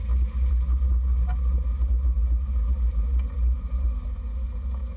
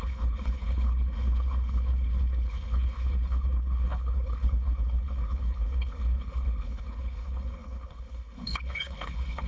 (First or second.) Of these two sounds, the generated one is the second